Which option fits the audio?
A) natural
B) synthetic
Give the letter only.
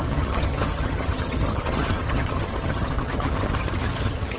B